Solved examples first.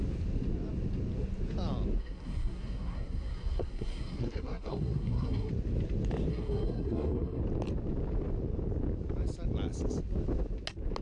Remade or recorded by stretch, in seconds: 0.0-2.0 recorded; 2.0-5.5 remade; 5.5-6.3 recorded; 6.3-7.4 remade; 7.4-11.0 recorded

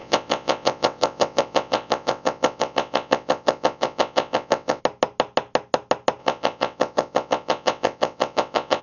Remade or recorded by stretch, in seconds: 0.0-4.8 remade; 4.8-6.2 recorded; 6.2-8.8 remade

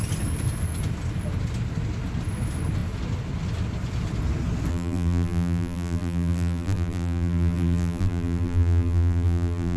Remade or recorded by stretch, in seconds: 0.0-4.7 recorded; 4.7-9.8 remade

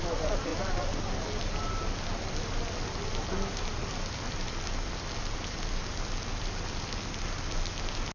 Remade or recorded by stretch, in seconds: 0.0-8.1 recorded

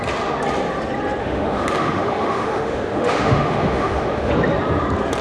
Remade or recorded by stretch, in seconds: 0.0-1.2 recorded; 1.2-4.3 remade; 4.3-5.2 recorded

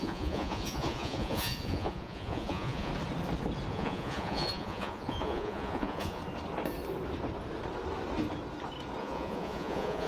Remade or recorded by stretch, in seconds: 0.0-2.9 remade; 2.9-3.7 recorded; 3.7-6.2 remade; 6.2-9.0 recorded; 9.0-10.1 remade